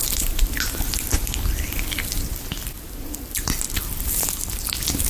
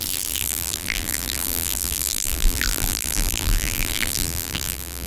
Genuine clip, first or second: first